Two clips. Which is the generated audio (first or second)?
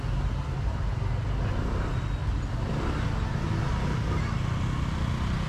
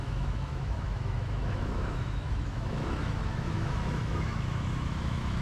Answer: second